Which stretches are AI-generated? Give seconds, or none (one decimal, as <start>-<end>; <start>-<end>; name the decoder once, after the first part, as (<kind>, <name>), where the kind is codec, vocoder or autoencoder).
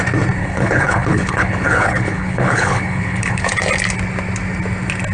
0.4-3.5 (codec, HILCodec)